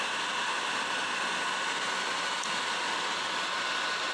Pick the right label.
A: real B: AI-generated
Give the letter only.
A